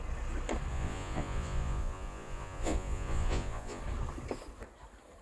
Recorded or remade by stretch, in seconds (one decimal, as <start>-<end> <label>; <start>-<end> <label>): 0.0-0.7 recorded; 0.7-3.8 remade; 3.8-5.2 recorded